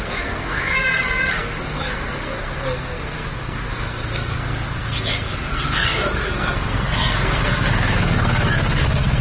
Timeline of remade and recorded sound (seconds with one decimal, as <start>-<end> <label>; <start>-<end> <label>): 0.0-9.2 remade